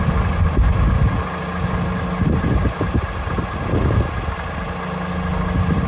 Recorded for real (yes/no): yes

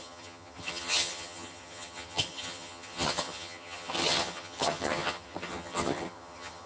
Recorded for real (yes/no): no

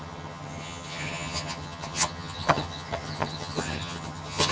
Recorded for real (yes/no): no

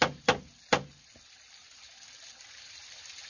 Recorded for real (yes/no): yes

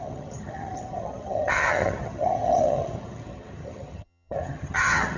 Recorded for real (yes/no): no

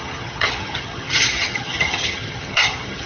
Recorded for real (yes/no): no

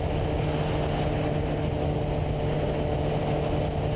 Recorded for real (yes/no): yes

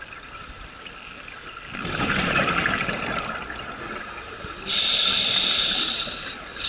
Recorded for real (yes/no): yes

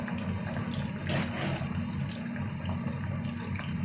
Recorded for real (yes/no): yes